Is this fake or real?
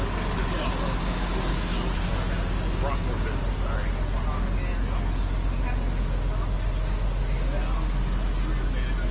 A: real